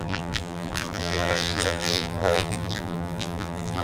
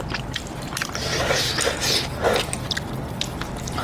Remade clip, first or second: first